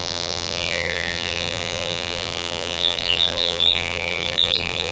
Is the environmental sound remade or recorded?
remade